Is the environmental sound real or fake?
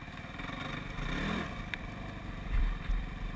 fake